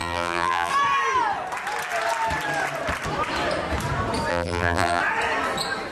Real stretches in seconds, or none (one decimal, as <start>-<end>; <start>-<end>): 0.7-4.3; 5.0-5.9

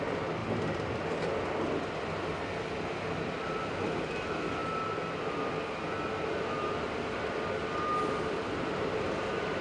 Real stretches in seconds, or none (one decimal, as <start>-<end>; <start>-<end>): 0.0-9.6

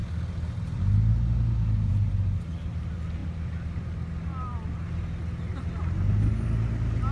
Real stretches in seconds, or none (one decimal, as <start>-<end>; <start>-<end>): 0.0-7.1

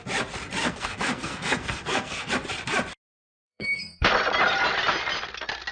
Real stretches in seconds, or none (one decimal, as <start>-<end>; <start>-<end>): 0.0-0.6; 2.3-3.3; 4.1-5.7